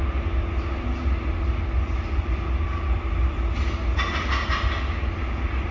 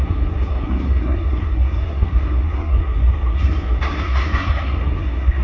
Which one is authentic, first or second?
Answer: first